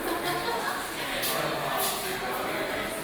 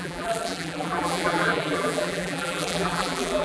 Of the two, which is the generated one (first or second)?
second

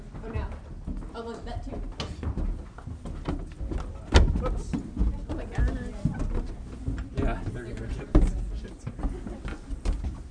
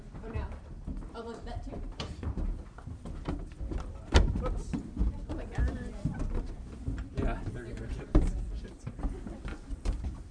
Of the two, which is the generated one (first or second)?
second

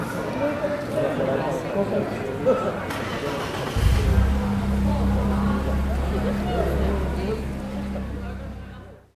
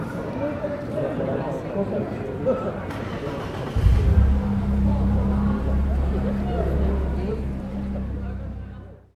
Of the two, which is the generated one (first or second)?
second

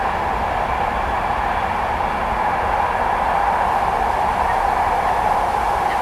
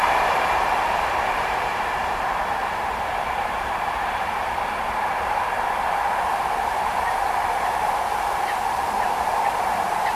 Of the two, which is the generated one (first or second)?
second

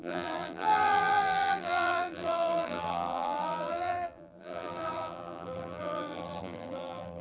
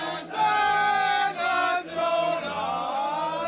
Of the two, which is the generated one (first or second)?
first